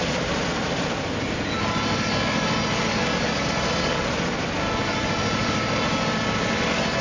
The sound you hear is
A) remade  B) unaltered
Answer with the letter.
B